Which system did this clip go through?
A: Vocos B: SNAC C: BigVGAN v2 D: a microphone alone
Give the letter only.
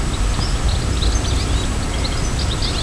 D